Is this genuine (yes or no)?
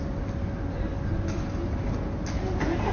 yes